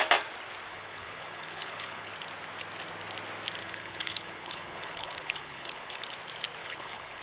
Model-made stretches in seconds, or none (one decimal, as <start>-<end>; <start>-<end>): 0.7-2.1; 3.6-6.0; 6.6-7.2